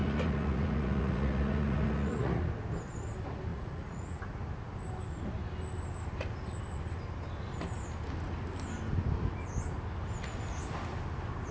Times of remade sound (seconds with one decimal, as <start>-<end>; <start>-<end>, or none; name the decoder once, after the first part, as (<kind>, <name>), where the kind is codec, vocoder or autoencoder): 0.0-2.4 (vocoder, Vocos); 3.5-4.2